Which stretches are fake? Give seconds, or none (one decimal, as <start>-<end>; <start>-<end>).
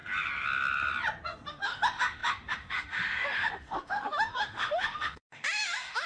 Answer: 1.5-6.1